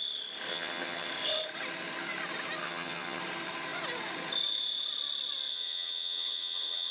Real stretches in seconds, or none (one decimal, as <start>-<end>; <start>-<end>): 0.0-0.5; 1.1-2.6; 3.2-5.5